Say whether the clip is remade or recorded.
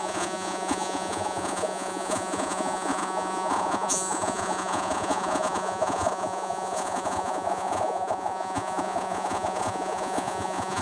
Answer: remade